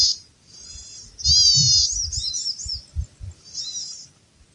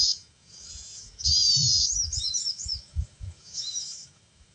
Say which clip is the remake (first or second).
second